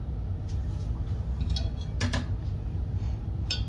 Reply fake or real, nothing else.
real